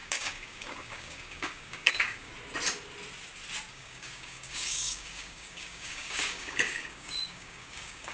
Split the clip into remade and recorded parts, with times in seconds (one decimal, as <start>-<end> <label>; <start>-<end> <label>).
0.0-2.3 remade; 2.3-3.7 recorded; 3.7-8.1 remade